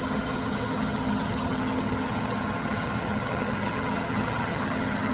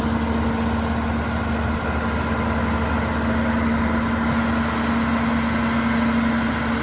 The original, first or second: second